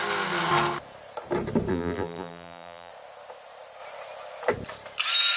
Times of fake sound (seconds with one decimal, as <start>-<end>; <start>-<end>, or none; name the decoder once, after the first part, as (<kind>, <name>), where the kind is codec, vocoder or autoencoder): 1.7-2.9 (vocoder, BigVGAN v2)